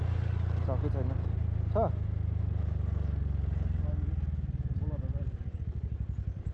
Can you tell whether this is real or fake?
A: real